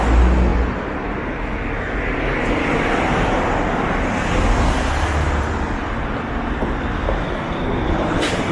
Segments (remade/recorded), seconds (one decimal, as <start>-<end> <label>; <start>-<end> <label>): 0.0-8.5 recorded